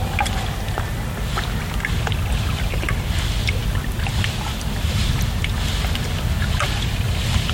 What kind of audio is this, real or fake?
real